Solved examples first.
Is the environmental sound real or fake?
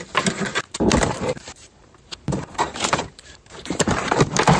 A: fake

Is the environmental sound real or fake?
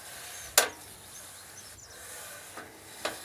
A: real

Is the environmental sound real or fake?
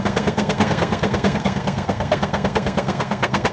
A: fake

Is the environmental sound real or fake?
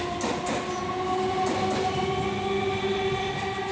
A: real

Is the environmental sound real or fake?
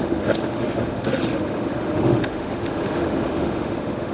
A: fake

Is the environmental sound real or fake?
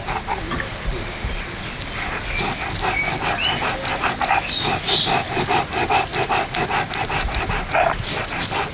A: real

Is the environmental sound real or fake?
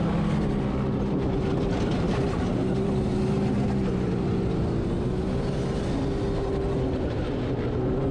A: real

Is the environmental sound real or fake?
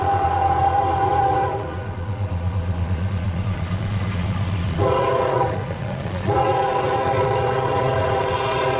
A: fake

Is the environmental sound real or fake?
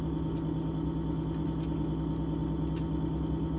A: real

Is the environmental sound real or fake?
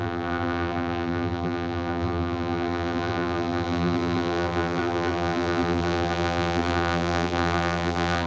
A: fake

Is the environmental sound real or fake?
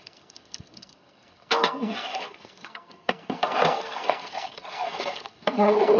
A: fake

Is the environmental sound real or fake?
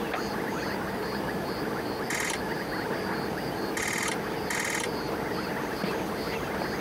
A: real